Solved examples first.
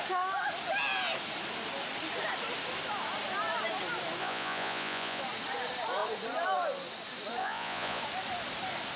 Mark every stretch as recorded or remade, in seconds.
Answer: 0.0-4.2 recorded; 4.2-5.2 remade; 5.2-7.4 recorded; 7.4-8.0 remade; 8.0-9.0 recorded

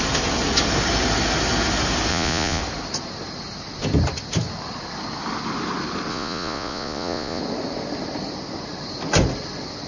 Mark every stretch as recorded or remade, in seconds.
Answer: 0.0-2.1 recorded; 2.1-2.6 remade; 2.6-6.1 recorded; 6.1-7.4 remade; 7.4-9.9 recorded

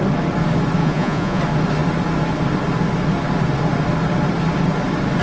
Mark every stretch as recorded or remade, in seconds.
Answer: 0.0-0.8 recorded; 0.8-1.4 remade; 1.4-5.2 recorded

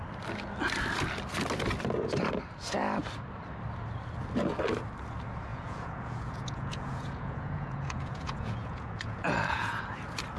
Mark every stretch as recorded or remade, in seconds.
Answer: 0.0-5.5 recorded; 5.5-9.8 remade; 9.8-10.4 recorded

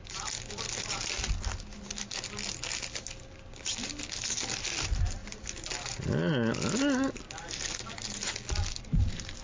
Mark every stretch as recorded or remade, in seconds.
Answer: 0.0-9.4 recorded

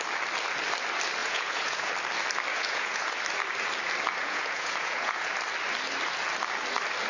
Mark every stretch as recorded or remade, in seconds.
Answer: 0.0-1.2 recorded; 1.2-1.9 remade; 1.9-2.5 recorded; 2.5-3.2 remade; 3.2-4.2 recorded; 4.2-5.3 remade; 5.3-7.1 recorded

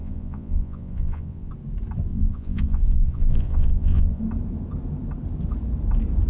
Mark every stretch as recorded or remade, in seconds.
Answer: 0.0-1.5 remade; 1.5-2.1 recorded; 2.1-4.2 remade; 4.2-6.3 recorded